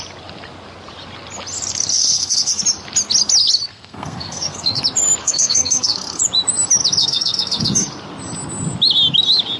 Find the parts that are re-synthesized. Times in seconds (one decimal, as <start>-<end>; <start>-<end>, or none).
1.9-2.6; 3.7-4.8; 5.2-6.2; 7.0-7.9